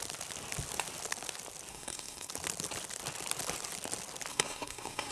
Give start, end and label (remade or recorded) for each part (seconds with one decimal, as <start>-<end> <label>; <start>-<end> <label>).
0.0-1.7 recorded; 1.7-2.3 remade; 2.3-4.3 recorded; 4.3-5.1 remade